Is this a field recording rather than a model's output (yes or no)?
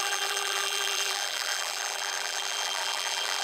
no